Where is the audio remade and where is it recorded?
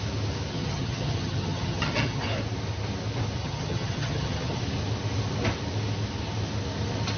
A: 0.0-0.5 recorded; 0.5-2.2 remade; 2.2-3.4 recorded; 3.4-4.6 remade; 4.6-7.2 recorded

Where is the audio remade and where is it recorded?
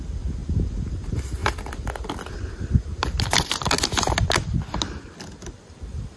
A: 0.0-6.2 recorded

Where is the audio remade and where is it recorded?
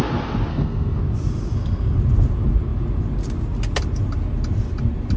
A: 0.0-0.5 recorded; 0.5-1.0 remade; 1.0-5.2 recorded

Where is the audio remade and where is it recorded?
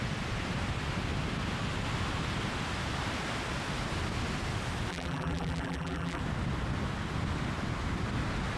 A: 0.0-4.9 recorded; 4.9-6.2 remade; 6.2-8.6 recorded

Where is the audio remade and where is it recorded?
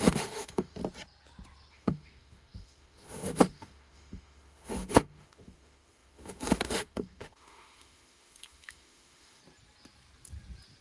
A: 0.0-0.8 remade; 0.8-1.7 recorded; 1.7-9.4 remade; 9.4-10.8 recorded